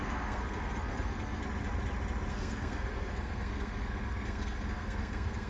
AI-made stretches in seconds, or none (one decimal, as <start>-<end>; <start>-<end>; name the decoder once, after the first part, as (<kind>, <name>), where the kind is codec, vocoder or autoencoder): 0.0-1.4 (codec, SNAC); 2.3-5.5

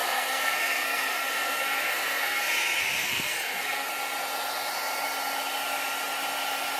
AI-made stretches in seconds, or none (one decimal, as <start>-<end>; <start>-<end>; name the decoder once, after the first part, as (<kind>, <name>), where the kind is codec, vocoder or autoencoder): 0.0-2.4 (codec, SNAC); 2.8-3.9